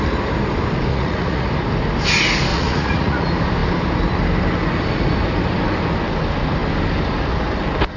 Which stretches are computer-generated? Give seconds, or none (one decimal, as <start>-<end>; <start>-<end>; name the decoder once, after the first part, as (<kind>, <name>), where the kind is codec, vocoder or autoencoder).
0.9-1.5 (vocoder, Vocos); 2.5-3.2